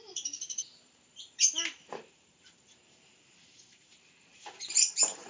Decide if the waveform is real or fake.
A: fake